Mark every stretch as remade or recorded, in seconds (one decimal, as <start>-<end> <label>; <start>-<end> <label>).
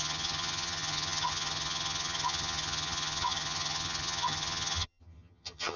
0.0-5.8 remade